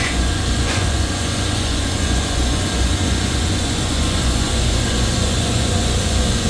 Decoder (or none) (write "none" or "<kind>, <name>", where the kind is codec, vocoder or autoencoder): vocoder, Vocos